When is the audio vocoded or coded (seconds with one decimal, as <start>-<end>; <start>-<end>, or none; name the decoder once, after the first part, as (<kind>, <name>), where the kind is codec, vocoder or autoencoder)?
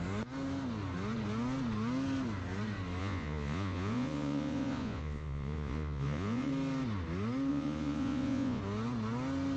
3.0-6.5 (vocoder, Vocos); 7.5-8.6